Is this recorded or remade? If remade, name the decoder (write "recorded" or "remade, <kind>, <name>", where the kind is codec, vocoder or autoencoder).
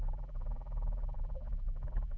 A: remade, vocoder, BigVGAN v2